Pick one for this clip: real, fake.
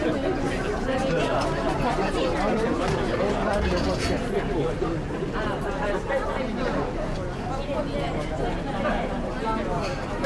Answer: real